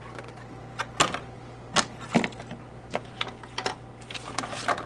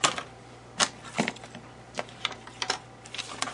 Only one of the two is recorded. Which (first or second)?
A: first